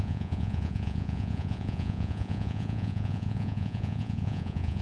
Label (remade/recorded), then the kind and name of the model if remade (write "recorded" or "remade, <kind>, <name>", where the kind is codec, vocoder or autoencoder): remade, vocoder, Vocos